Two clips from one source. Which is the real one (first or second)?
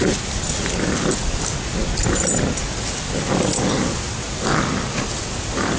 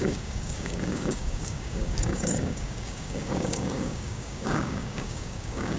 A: first